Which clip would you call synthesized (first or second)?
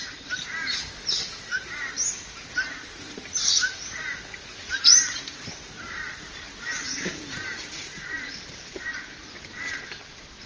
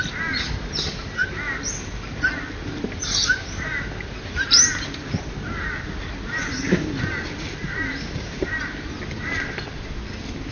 first